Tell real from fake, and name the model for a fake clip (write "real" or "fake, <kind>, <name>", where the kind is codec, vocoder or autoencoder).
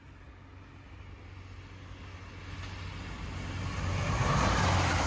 real